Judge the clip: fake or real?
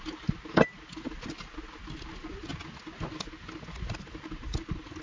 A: real